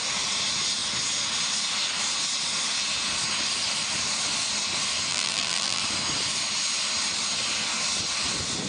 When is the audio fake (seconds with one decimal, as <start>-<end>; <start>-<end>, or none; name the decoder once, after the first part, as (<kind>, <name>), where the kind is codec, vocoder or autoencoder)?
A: 5.1-5.8 (vocoder, BigVGAN v2)